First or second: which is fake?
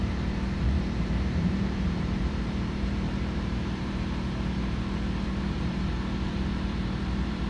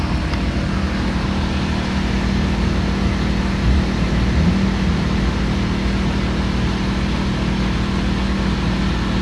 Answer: first